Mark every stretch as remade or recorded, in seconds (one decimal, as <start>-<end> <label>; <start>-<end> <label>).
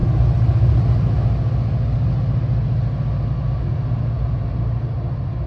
0.0-5.5 recorded